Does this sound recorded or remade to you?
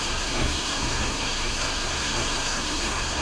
remade